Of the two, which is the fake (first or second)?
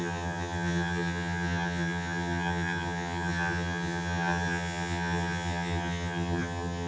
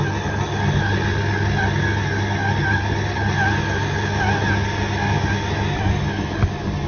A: first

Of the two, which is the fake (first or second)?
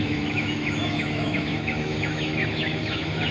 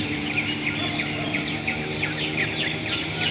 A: first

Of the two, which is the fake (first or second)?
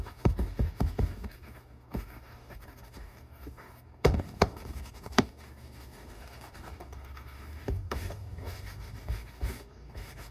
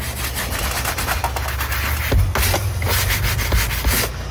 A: first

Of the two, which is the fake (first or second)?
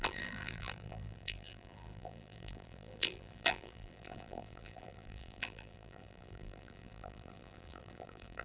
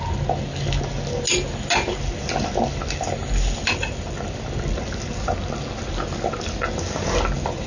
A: first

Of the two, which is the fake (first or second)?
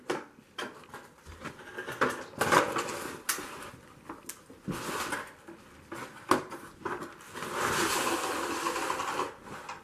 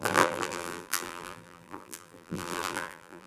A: second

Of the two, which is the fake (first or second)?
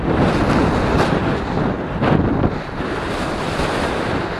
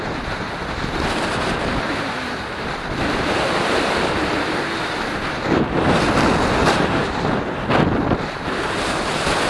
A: second